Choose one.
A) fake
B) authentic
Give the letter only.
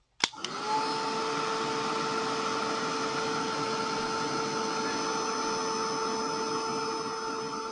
B